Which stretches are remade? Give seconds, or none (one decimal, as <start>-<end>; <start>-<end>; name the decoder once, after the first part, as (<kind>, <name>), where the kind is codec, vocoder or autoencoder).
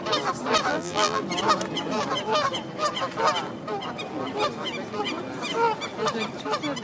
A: 0.7-1.2 (vocoder, BigVGAN v2)